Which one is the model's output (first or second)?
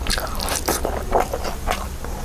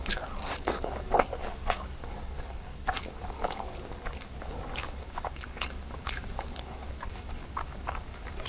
second